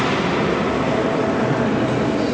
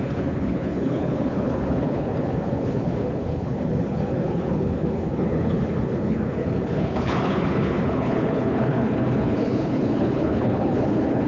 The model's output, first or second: second